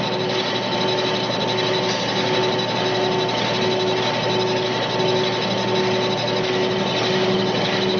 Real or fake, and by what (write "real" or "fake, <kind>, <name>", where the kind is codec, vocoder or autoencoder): real